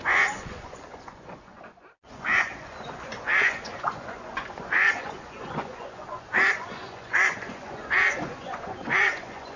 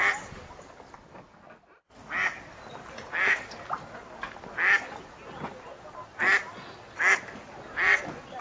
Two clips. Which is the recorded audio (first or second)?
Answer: second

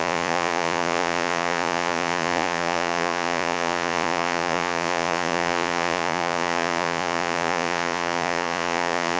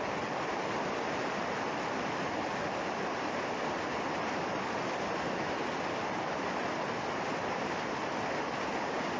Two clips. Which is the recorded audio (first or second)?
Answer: second